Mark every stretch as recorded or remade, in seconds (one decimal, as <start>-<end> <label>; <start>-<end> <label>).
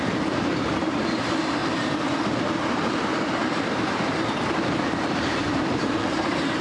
0.0-1.6 remade; 1.6-2.4 recorded; 2.4-6.6 remade